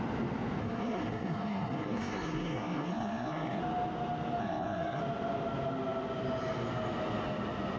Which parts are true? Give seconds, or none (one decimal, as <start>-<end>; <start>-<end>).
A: 0.0-0.6; 3.6-4.4; 5.0-7.8